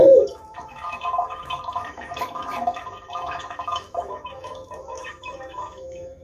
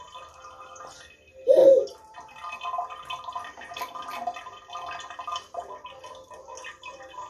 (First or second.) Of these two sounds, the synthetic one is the first